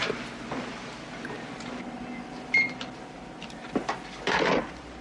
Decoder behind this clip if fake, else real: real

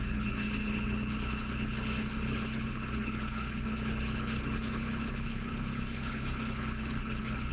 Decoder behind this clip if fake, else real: fake, codec, HILCodec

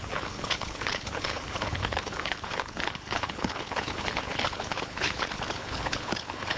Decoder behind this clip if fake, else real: fake, codec, HILCodec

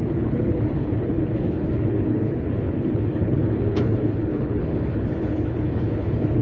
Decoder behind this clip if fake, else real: fake, codec, HILCodec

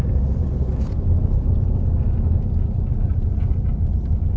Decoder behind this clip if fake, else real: real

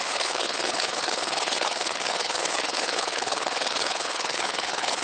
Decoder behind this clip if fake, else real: fake, codec, HILCodec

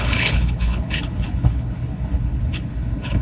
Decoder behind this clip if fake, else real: fake, codec, HILCodec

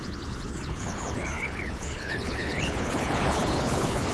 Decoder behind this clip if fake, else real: fake, codec, HILCodec